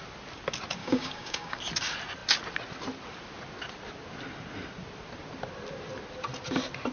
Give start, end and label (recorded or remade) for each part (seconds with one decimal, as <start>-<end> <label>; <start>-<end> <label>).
0.0-0.8 recorded; 0.8-1.6 remade; 1.6-6.9 recorded